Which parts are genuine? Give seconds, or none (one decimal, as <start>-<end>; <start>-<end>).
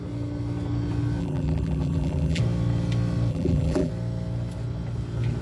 0.0-1.2; 2.4-3.3; 3.9-5.4